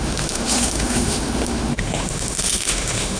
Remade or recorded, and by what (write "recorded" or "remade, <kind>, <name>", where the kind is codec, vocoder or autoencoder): remade, autoencoder, DAC-VAE